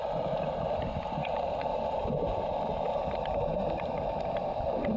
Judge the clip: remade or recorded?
remade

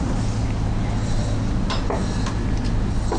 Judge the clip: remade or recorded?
recorded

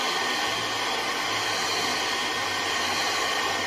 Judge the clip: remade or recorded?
recorded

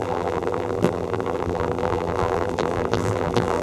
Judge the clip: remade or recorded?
remade